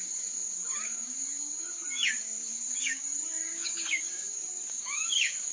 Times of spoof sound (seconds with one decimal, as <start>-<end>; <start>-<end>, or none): 0.0-5.5